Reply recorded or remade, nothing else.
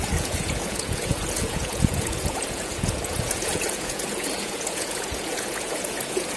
remade